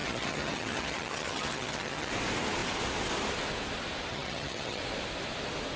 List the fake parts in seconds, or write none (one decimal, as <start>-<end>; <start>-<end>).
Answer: 0.0-2.1; 4.1-4.8